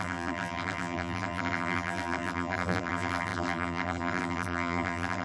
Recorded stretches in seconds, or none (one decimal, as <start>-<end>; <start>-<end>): none